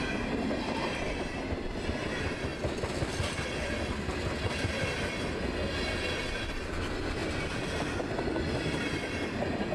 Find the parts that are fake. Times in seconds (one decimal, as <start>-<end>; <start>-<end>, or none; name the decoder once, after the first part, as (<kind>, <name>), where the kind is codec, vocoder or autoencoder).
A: none

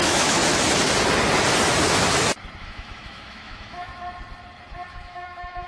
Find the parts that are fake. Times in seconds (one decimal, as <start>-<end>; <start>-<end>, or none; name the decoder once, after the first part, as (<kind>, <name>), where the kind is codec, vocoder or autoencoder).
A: 0.0-0.4 (autoencoder, DAC-VAE); 2.6-3.9; 4.9-5.7

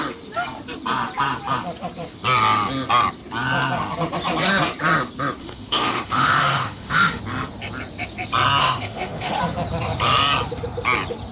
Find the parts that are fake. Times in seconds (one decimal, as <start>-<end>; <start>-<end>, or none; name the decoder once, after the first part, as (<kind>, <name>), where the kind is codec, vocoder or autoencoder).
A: 5.4-7.2 (autoencoder, DAC-VAE); 8.6-9.4

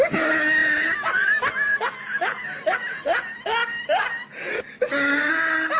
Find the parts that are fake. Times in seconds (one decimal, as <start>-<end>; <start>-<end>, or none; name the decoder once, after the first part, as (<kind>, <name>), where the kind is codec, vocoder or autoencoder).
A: none

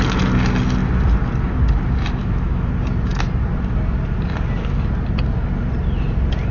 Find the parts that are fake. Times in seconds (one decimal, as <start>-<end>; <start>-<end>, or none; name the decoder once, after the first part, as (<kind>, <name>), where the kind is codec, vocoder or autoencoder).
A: 2.2-2.7 (autoencoder, DAC-VAE)

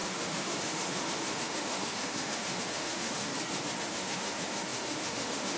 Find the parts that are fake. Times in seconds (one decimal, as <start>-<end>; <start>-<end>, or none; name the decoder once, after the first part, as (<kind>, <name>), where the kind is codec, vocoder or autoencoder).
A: 0.0-3.3 (autoencoder, DAC-VAE); 3.8-5.6

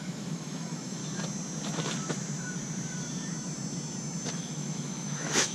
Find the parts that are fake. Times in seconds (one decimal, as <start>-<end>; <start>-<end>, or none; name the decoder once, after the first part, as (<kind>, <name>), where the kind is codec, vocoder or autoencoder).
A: 0.0-1.0 (autoencoder, DAC-VAE); 4.3-5.5